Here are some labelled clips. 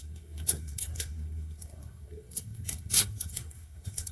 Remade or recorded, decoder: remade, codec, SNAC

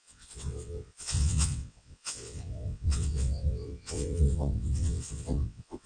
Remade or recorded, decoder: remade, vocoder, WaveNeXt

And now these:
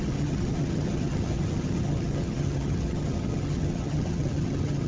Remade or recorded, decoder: remade, vocoder, HiFi-GAN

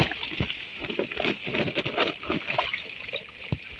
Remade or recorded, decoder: recorded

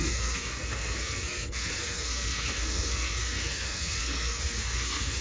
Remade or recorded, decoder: remade, codec, SNAC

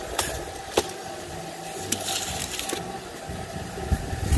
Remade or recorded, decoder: recorded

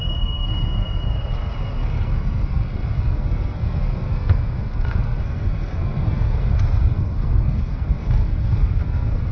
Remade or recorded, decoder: remade, codec, SNAC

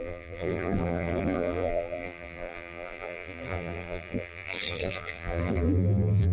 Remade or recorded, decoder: remade, vocoder, BigVGAN v2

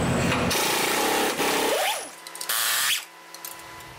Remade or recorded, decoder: recorded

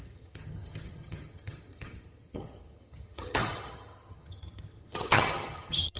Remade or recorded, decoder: remade, vocoder, HiFi-GAN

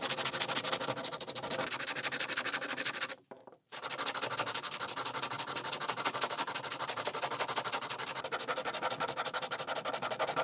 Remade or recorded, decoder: recorded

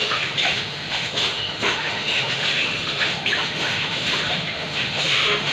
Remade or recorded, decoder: remade, autoencoder, DAC-VAE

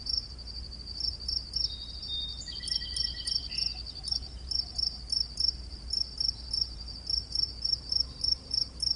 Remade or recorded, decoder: remade, vocoder, BigVGAN v2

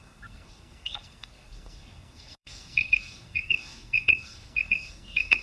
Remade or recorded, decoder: remade, codec, SNAC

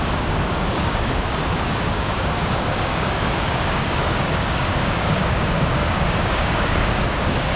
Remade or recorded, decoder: remade, codec, DAC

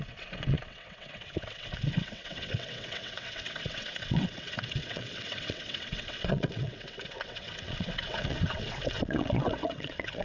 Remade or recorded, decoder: remade, vocoder, WaveNeXt